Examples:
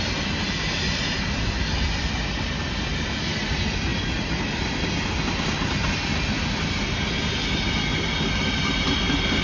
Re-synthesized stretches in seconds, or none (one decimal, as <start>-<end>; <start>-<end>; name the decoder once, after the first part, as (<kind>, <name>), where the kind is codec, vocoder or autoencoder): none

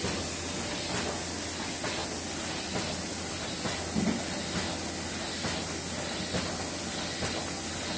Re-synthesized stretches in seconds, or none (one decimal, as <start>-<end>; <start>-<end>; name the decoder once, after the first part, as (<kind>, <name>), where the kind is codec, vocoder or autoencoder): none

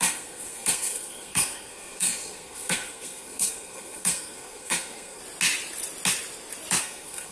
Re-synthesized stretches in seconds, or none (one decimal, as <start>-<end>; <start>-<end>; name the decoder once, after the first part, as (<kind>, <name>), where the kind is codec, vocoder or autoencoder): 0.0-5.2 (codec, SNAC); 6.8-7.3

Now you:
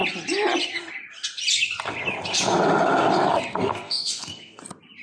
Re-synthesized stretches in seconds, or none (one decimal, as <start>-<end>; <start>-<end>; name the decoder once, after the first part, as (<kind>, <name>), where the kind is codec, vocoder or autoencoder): 3.7-4.6 (codec, SNAC)

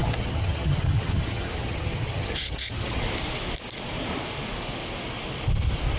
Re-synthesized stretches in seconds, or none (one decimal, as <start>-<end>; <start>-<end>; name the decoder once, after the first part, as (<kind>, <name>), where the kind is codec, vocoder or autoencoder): 0.0-3.0 (vocoder, HiFi-GAN)

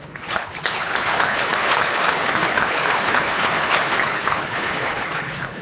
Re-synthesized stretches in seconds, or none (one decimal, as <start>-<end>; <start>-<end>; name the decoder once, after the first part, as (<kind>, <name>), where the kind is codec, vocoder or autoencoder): 0.0-5.6 (codec, HILCodec)

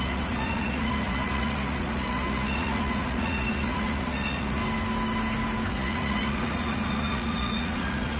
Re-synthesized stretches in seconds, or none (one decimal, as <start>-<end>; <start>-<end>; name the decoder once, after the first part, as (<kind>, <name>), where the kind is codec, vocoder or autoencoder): 0.0-4.6 (vocoder, Vocos); 5.7-8.2